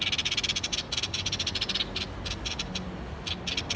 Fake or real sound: real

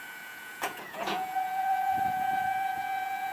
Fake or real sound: fake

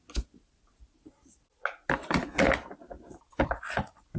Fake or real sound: real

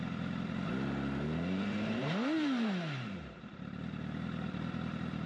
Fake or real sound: fake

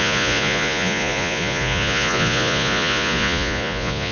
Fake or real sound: fake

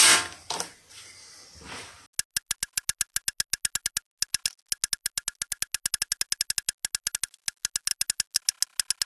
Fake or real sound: real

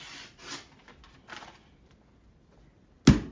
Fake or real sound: real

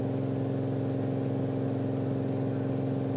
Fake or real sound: real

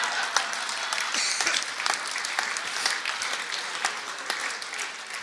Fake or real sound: real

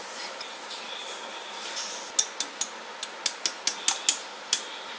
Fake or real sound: real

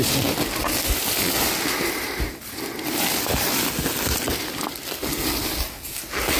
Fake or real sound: real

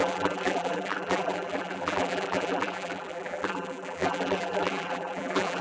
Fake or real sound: fake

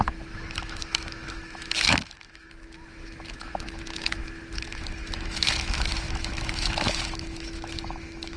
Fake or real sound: fake